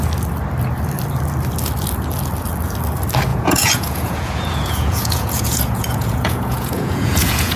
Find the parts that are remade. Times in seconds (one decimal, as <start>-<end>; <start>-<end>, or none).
3.3-7.6